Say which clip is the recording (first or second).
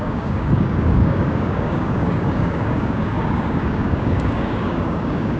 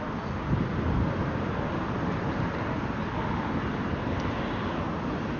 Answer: second